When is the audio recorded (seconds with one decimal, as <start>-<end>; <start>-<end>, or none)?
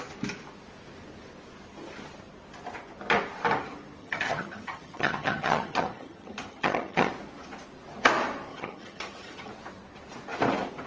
0.0-4.0; 7.1-8.5; 9.5-10.9